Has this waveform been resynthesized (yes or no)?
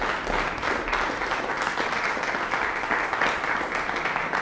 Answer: no